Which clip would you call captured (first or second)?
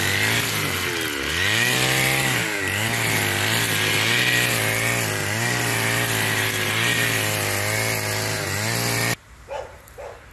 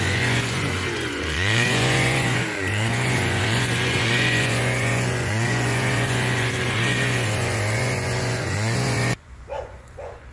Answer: first